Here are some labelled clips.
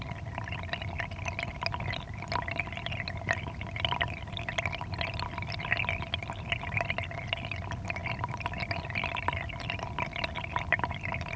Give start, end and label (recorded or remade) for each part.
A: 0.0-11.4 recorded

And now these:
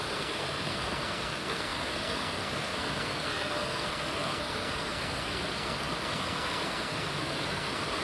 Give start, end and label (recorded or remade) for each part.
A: 0.0-8.0 remade

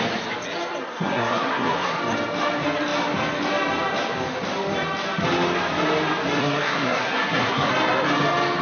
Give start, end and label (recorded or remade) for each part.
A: 0.0-0.8 recorded; 0.8-2.0 remade; 2.0-6.4 recorded; 6.4-7.7 remade; 7.7-8.6 recorded

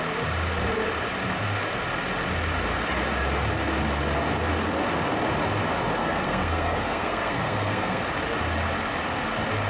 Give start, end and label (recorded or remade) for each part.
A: 0.0-6.0 recorded; 6.0-8.0 remade; 8.0-9.7 recorded

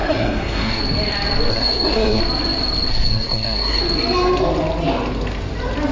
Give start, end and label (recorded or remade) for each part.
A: 0.0-0.8 remade; 0.8-1.5 recorded; 1.5-2.2 remade; 2.2-2.9 recorded; 2.9-3.8 remade; 3.8-5.9 recorded

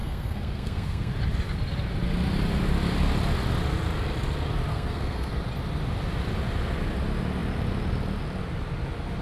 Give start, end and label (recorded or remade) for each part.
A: 0.0-1.1 remade; 1.1-4.7 recorded; 4.7-5.3 remade; 5.3-9.2 recorded

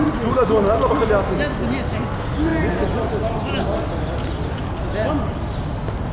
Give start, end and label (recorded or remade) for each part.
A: 0.0-6.1 recorded